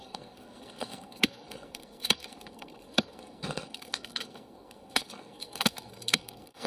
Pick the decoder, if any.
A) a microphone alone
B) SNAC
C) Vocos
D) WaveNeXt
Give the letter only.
B